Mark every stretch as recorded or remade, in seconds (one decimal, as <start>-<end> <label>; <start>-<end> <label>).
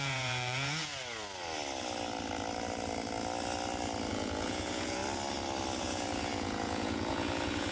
0.0-0.9 remade; 0.9-4.1 recorded; 4.1-5.0 remade; 5.0-5.8 recorded; 5.8-7.7 remade